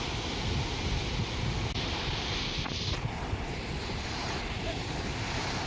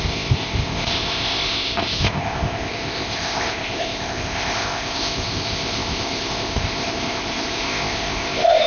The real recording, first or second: first